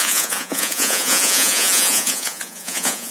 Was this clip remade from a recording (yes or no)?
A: yes